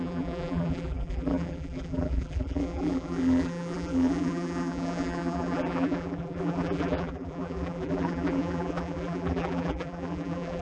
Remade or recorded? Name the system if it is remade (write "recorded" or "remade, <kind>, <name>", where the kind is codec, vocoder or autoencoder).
remade, vocoder, BigVGAN v2